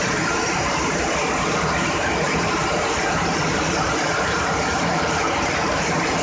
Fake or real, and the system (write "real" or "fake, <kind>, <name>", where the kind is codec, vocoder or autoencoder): fake, vocoder, BigVGAN v2